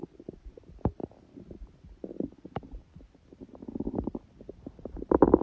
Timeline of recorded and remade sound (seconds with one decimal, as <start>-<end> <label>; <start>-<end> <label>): 0.0-5.4 recorded